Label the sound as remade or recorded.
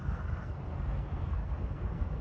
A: remade